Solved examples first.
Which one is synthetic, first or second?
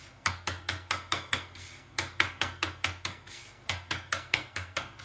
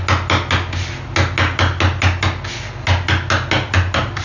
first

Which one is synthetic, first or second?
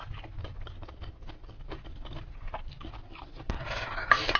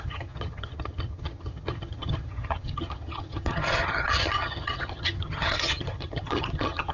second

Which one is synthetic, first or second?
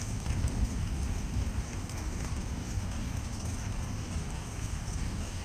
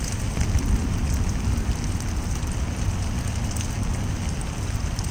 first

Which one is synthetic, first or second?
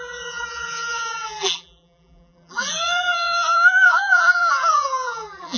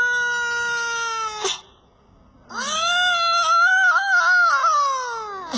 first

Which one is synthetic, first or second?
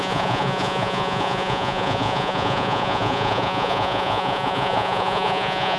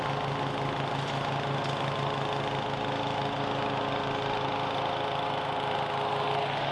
first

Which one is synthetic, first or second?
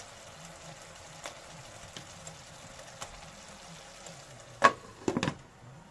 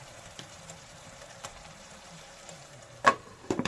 second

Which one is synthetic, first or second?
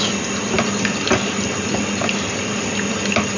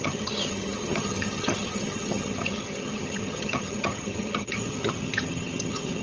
second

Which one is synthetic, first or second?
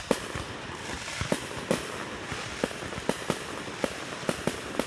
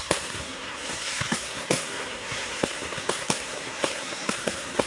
second